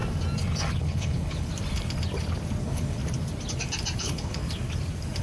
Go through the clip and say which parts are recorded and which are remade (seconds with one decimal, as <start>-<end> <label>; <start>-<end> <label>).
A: 0.0-0.8 recorded; 0.8-1.5 remade; 1.5-2.6 recorded; 2.6-3.0 remade; 3.0-4.0 recorded; 4.0-4.4 remade; 4.4-5.2 recorded

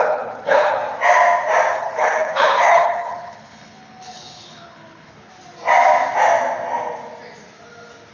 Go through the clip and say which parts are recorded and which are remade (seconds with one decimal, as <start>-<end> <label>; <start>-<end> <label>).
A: 0.0-0.8 remade; 0.8-1.7 recorded; 1.7-5.3 remade; 5.3-8.1 recorded